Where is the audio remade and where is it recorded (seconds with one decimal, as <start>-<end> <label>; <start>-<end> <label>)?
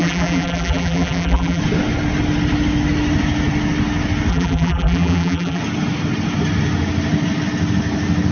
0.0-1.6 remade; 1.6-4.3 recorded; 4.3-5.6 remade; 5.6-8.3 recorded